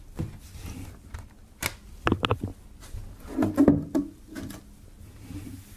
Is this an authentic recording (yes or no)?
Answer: yes